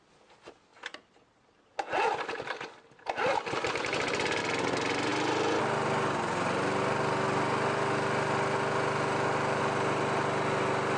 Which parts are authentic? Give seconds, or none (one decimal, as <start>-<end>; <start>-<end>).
0.0-11.0